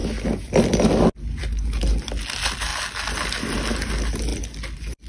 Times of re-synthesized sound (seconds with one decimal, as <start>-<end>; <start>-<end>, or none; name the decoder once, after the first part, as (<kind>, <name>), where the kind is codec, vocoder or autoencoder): none